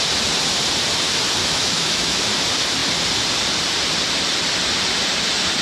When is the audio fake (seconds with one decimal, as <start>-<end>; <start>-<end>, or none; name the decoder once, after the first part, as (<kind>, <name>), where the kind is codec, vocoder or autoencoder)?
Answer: 1.4-2.2 (autoencoder, DAC-VAE)